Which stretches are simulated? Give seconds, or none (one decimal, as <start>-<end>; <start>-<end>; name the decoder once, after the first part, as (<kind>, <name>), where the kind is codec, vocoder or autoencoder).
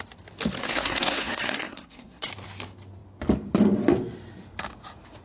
0.6-2.3 (codec, SNAC)